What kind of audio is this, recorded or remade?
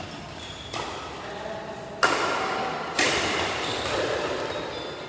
recorded